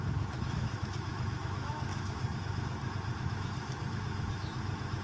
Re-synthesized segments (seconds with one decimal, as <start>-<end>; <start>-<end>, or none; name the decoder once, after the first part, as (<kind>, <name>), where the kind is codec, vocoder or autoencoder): 0.0-5.0 (autoencoder, DAC-VAE)